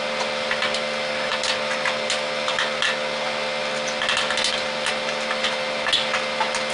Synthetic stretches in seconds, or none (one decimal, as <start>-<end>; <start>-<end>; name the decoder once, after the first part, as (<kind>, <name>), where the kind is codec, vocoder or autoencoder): none